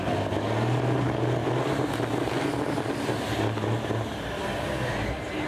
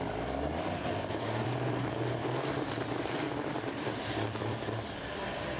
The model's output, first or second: second